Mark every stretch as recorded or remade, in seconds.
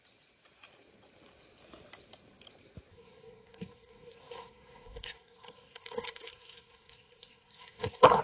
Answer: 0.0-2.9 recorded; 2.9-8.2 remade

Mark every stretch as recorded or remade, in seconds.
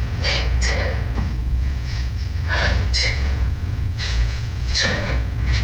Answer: 0.0-1.4 recorded; 1.4-2.1 remade; 2.1-3.0 recorded; 3.0-5.1 remade; 5.1-5.6 recorded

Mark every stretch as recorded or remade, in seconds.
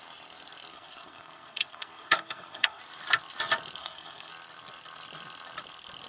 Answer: 0.0-0.7 recorded; 0.7-2.8 remade; 2.8-3.8 recorded; 3.8-4.3 remade; 4.3-6.1 recorded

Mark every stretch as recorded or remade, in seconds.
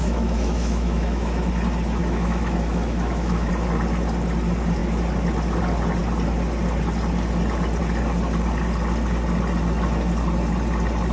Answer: 0.0-1.5 remade; 1.5-2.0 recorded; 2.0-3.5 remade; 3.5-11.1 recorded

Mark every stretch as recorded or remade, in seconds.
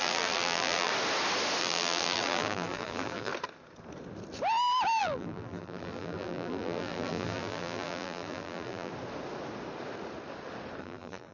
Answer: 0.0-0.9 remade; 0.9-1.6 recorded; 1.6-3.3 remade; 3.3-5.0 recorded; 5.0-8.9 remade; 8.9-10.8 recorded; 10.8-11.3 remade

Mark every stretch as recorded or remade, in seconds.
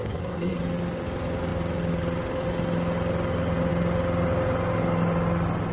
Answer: 0.0-0.6 remade; 0.6-5.7 recorded